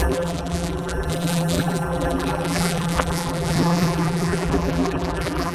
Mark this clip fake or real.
fake